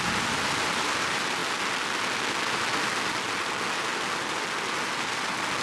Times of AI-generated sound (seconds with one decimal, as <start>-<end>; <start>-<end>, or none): none